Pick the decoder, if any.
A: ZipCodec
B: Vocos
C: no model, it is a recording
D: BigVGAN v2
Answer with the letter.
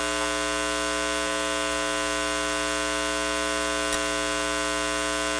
C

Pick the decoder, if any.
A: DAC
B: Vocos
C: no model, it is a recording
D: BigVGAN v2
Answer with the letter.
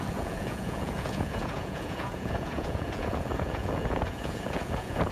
B